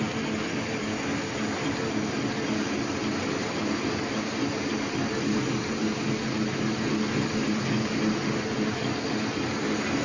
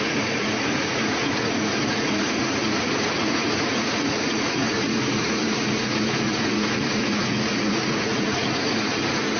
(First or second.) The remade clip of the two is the second